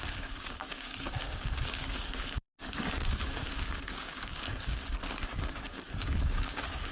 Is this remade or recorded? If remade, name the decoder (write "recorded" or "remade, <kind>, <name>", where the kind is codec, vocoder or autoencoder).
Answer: remade, codec, DAC